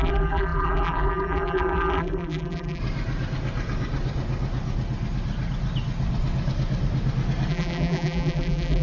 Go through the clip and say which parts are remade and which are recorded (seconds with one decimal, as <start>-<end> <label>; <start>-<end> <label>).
0.0-2.8 remade; 2.8-7.5 recorded; 7.5-8.8 remade